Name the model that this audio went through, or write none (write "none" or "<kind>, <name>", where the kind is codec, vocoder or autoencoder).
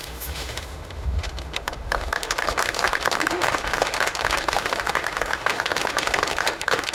autoencoder, DAC-VAE